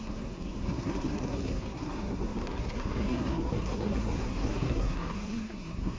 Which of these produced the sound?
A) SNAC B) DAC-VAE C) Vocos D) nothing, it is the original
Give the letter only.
A